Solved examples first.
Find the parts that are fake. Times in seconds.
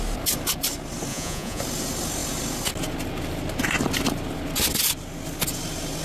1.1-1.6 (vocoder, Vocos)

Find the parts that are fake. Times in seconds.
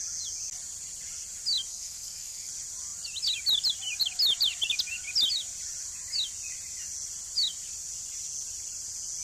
1.7-2.5 (codec, SNAC)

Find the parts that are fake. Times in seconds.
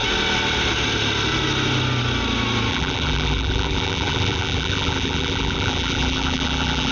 2.7-6.9 (vocoder, BigVGAN v2)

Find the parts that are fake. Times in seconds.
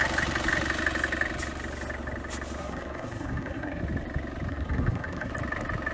2.6-3.8 (codec, SNAC); 4.5-5.3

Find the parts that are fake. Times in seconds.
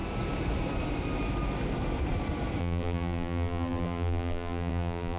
2.6-5.2 (vocoder, BigVGAN v2)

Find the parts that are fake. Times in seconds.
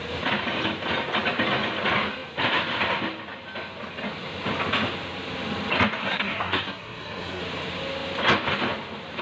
6.0-7.4 (codec, SNAC)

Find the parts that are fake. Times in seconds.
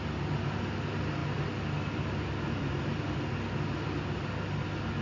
none